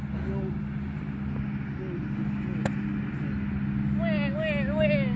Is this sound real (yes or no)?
yes